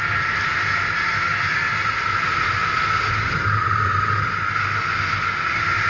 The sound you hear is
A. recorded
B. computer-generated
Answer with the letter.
A